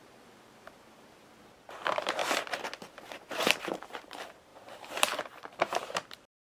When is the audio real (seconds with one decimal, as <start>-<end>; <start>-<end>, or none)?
1.2-1.8; 2.2-3.6